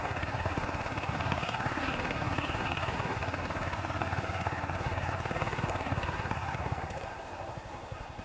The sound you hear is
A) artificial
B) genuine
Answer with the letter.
A